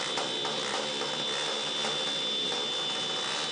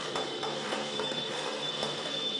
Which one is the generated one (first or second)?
second